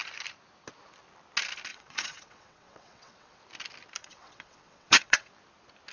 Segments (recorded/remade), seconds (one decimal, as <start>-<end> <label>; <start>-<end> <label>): 0.0-1.7 recorded; 1.7-3.4 remade; 3.4-4.0 recorded; 4.0-5.3 remade; 5.3-5.9 recorded